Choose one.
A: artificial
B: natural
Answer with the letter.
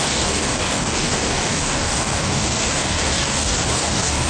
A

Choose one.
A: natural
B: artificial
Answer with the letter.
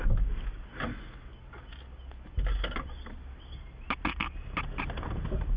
A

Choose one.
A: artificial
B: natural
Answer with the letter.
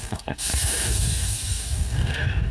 A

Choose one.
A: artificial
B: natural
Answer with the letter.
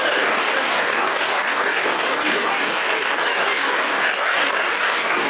A